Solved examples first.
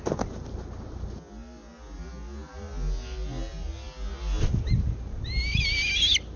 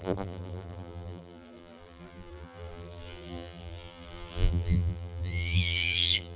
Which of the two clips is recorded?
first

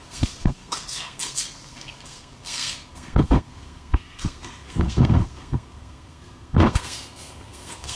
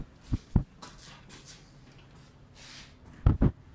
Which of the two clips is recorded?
second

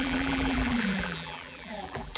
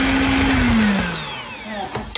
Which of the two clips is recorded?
second